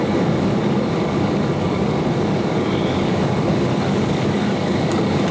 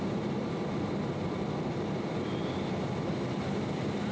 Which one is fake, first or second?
first